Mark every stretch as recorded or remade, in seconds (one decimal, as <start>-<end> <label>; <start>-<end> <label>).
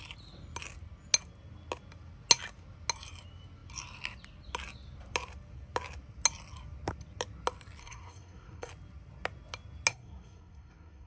0.0-7.8 recorded; 7.8-8.7 remade; 8.7-9.9 recorded; 9.9-11.1 remade